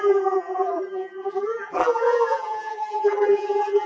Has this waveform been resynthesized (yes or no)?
yes